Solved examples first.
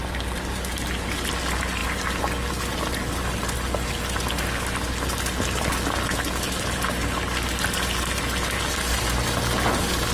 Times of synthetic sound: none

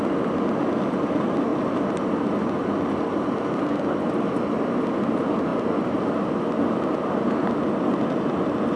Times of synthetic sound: 1.5-2.1 (vocoder, BigVGAN v2); 5.5-6.1

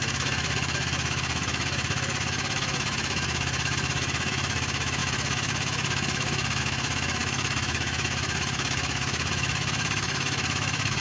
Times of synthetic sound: 0.0-11.0 (autoencoder, DAC-VAE)

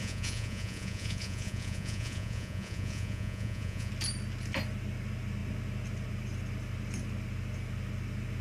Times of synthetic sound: 0.0-3.9 (vocoder, Vocos)

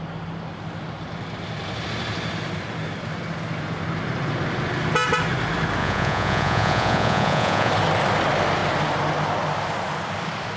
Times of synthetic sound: 5.8-7.7 (vocoder, Vocos)

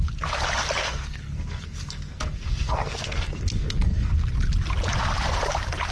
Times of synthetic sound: 0.8-4.3 (codec, SNAC)